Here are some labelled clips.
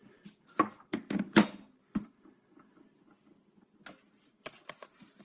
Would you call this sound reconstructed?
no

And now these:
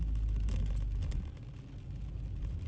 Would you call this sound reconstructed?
no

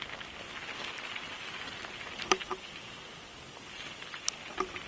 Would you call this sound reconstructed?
no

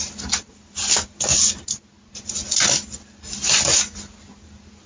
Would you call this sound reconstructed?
no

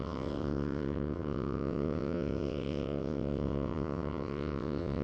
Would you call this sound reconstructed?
yes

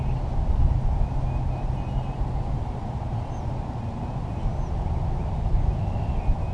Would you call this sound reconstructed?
no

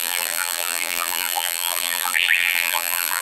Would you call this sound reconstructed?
yes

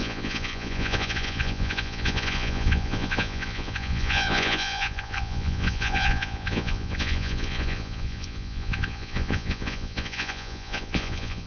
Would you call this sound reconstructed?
yes